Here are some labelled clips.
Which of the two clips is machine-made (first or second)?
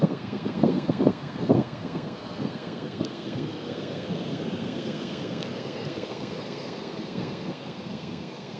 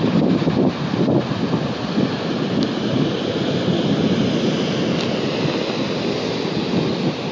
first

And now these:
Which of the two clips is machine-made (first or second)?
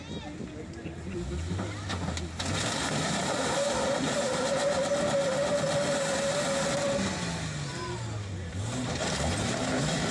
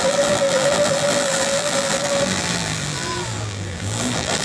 second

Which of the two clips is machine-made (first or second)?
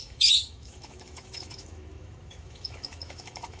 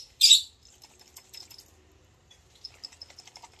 first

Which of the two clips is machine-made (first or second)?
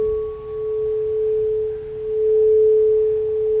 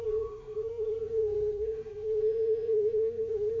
second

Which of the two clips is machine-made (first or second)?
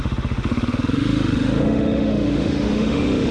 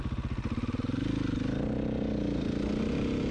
first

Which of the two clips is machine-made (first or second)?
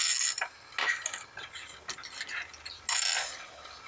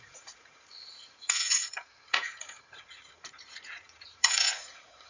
second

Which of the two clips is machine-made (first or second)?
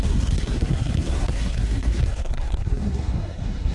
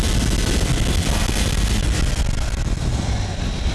first